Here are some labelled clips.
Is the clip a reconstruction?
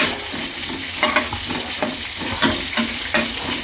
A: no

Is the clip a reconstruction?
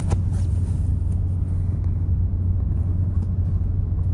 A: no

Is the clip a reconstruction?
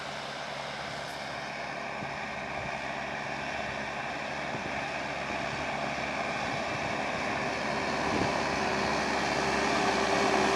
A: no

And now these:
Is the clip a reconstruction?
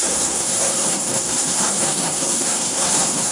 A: yes